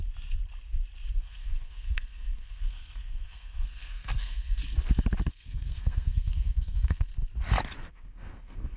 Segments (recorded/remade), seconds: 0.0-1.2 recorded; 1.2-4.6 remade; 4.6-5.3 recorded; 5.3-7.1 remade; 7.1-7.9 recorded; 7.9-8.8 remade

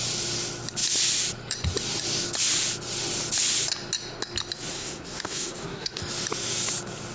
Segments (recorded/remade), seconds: 0.0-4.7 recorded; 4.7-6.0 remade; 6.0-7.1 recorded

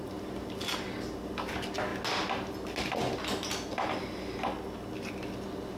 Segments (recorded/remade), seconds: 0.0-5.8 recorded

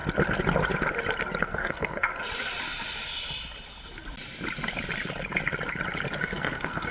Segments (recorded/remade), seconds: 0.0-1.4 recorded; 1.4-2.1 remade; 2.1-6.2 recorded; 6.2-6.9 remade

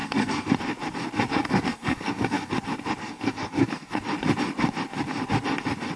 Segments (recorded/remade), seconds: 0.0-0.5 remade; 0.5-1.3 recorded; 1.3-2.5 remade; 2.5-3.0 recorded; 3.0-4.0 remade; 4.0-6.0 recorded

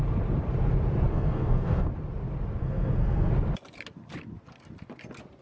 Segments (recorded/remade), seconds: 0.0-1.1 recorded; 1.1-1.9 remade; 1.9-2.6 recorded; 2.6-3.3 remade; 3.3-5.4 recorded

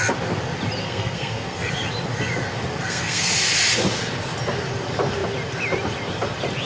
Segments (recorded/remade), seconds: 0.0-0.8 recorded; 0.8-1.7 remade; 1.7-2.8 recorded; 2.8-3.3 remade; 3.3-6.7 recorded